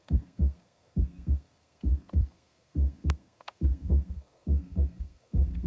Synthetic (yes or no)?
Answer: yes